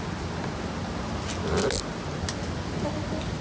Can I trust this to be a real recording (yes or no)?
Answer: yes